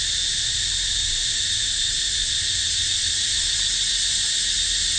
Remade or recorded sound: recorded